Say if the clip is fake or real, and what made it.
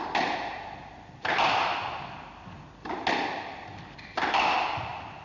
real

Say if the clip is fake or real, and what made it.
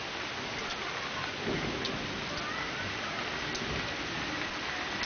real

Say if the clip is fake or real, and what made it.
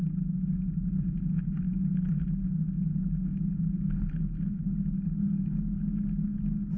real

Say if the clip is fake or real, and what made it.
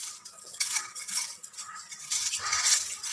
fake, vocoder, WaveNeXt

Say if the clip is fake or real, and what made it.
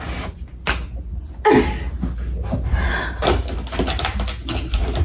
real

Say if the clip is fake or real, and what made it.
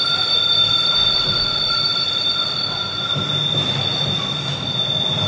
real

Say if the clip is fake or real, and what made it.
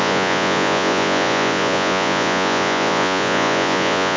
fake, vocoder, Vocos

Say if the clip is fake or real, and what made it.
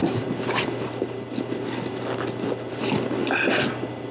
real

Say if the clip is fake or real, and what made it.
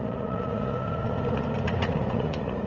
fake, vocoder, Vocos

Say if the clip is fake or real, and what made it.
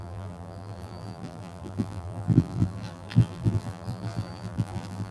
fake, vocoder, BigVGAN v2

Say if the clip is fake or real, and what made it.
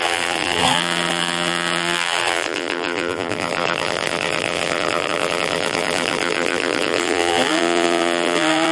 fake, vocoder, BigVGAN v2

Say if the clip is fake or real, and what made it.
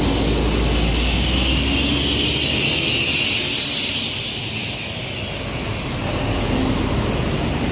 real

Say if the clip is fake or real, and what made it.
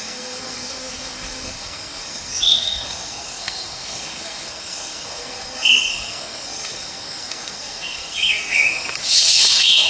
fake, codec, SNAC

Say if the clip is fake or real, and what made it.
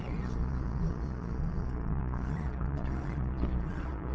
fake, vocoder, Vocos